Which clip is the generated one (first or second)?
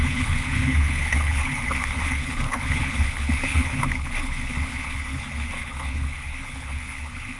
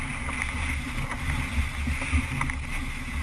first